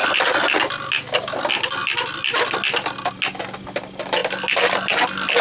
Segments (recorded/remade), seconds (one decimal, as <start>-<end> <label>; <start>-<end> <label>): 0.0-5.4 recorded